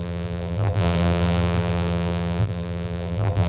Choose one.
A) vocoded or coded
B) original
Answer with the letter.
A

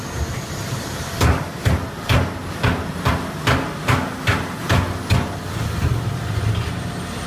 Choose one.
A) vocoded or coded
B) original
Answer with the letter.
B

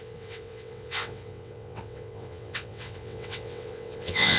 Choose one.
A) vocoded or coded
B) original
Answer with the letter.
A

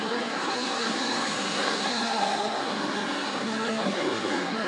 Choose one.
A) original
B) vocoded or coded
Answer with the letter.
B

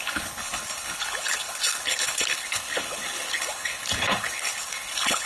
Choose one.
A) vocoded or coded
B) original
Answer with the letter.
A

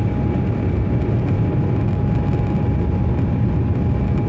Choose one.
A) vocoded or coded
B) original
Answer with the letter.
B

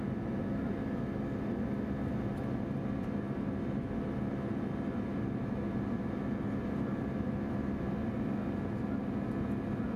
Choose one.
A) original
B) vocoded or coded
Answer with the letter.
A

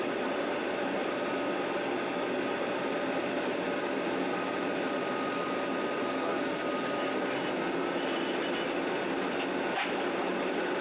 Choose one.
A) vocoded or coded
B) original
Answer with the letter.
B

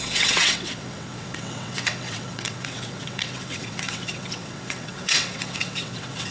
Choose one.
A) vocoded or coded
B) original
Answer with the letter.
A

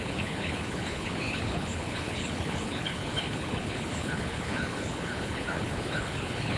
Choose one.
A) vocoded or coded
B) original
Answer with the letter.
A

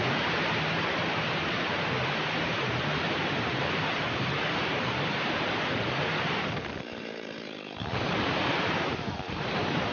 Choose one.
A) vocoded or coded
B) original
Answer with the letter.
A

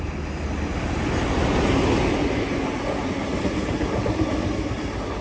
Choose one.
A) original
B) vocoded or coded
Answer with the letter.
A